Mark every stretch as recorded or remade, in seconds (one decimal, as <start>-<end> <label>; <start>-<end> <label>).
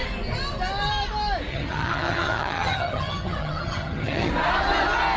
0.0-1.5 recorded; 1.5-4.3 remade; 4.3-5.2 recorded